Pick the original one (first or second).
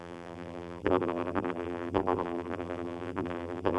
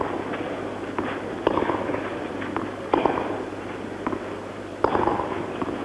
second